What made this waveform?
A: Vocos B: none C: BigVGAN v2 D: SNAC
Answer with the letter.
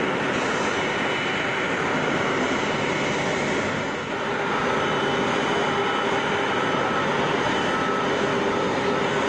B